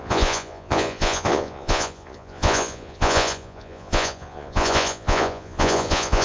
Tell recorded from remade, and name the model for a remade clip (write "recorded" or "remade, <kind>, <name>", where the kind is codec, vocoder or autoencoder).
remade, vocoder, Vocos